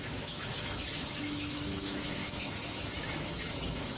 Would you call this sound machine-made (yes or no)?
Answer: yes